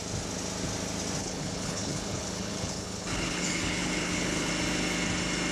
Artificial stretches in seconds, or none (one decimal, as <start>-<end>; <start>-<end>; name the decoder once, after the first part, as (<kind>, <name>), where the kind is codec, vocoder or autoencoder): 1.2-4.5 (codec, HILCodec)